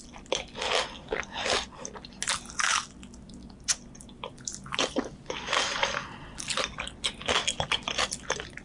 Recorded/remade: recorded